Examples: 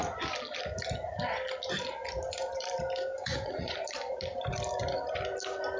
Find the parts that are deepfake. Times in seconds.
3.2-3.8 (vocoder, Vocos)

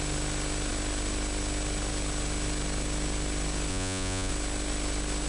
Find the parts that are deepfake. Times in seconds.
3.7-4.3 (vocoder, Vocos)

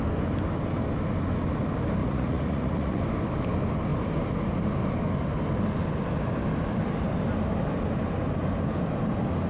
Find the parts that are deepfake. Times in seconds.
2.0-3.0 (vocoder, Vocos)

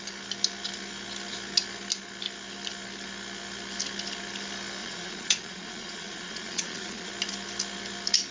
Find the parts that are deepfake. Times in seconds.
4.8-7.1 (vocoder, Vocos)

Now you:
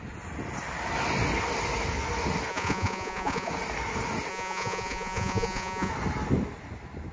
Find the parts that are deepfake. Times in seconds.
2.5-3.5 (vocoder, Vocos); 4.3-5.9